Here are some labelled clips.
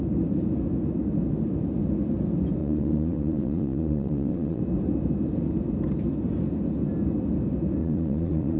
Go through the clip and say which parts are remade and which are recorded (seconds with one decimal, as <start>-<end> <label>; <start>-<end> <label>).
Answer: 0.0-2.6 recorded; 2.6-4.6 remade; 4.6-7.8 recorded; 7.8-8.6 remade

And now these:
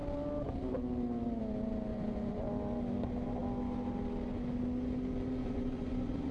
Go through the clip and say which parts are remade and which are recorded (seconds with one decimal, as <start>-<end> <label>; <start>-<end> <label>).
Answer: 0.0-1.9 recorded; 1.9-2.4 remade; 2.4-5.4 recorded; 5.4-6.3 remade

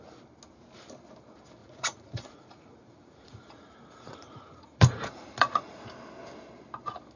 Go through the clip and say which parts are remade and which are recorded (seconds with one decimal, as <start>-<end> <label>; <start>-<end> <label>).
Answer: 0.0-1.6 recorded; 1.6-5.9 remade; 5.9-7.2 recorded